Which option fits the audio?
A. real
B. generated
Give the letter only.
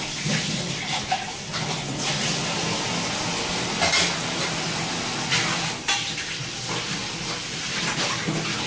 A